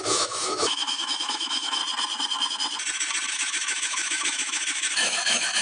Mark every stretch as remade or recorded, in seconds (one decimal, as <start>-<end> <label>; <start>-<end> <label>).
0.0-1.8 remade; 1.8-3.3 recorded; 3.3-5.6 remade